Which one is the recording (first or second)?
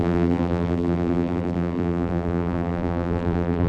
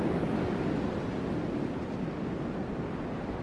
second